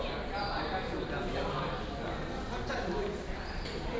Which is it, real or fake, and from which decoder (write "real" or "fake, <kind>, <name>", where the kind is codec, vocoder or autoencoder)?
real